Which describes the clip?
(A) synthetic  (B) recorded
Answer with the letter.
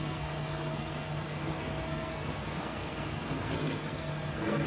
A